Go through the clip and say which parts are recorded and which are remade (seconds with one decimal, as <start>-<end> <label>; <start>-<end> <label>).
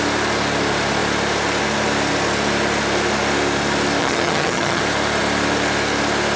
0.0-4.0 recorded; 4.0-4.8 remade; 4.8-6.4 recorded